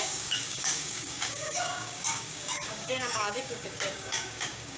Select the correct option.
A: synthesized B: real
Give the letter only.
A